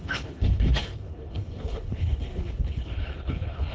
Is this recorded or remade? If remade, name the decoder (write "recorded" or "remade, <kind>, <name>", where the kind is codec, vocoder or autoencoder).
remade, codec, HILCodec